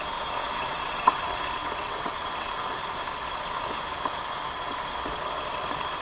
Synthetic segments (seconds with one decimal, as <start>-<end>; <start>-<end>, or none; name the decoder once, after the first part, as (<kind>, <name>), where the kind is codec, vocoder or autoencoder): 0.4-1.2 (vocoder, WaveNeXt); 1.6-2.5